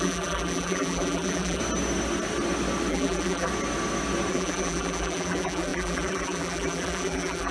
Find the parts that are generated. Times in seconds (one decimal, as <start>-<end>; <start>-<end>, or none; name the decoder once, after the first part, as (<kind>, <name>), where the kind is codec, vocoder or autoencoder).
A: 0.0-1.6 (vocoder, BigVGAN v2); 2.9-3.5; 4.3-7.5